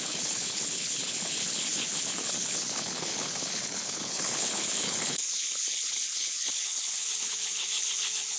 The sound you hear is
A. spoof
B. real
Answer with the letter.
A